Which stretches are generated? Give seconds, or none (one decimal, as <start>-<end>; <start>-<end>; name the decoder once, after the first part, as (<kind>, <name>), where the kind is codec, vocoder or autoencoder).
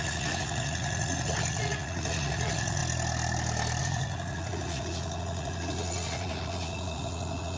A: 0.0-2.8 (vocoder, Vocos); 3.8-7.6